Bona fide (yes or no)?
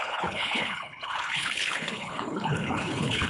no